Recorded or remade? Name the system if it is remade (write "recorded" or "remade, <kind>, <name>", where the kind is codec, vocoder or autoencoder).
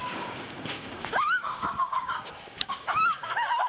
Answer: remade, codec, DAC